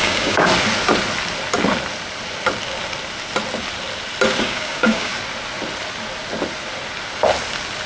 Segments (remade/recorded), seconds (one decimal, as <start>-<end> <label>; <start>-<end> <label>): 0.0-0.5 remade; 0.5-4.4 recorded; 4.4-5.1 remade; 5.1-7.9 recorded